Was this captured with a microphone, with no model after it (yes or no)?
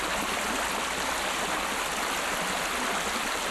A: yes